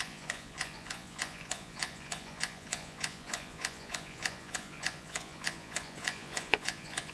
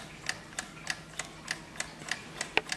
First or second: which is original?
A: second